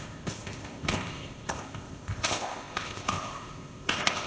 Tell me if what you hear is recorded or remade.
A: remade